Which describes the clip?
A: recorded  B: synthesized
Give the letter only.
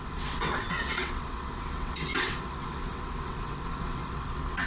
B